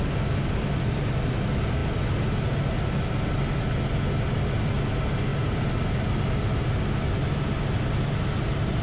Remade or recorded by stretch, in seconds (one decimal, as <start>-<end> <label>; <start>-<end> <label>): 0.0-8.8 recorded